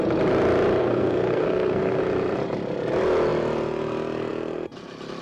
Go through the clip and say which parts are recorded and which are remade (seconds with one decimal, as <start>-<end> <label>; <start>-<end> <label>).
0.0-0.8 recorded; 0.8-2.0 remade; 2.0-5.2 recorded